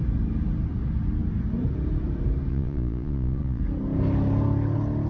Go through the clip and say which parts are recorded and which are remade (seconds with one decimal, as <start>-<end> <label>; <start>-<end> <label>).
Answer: 0.0-2.5 recorded; 2.5-3.6 remade; 3.6-5.1 recorded